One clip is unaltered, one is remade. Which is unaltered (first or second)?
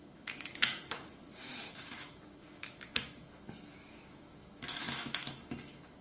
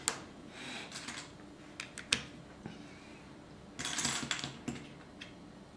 second